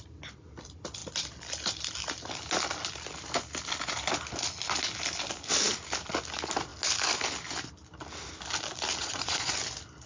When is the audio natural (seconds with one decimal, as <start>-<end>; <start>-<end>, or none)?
0.0-9.0; 9.5-10.1